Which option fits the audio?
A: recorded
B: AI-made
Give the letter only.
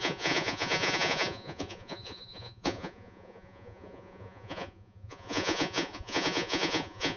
B